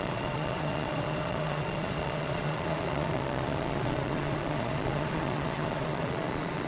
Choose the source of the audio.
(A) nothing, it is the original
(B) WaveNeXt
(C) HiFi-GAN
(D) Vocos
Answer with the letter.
D